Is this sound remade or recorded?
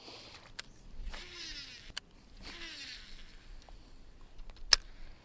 recorded